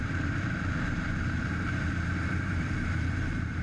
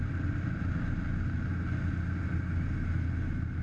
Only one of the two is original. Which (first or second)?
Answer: second